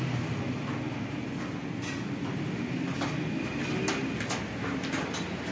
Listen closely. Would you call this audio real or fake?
real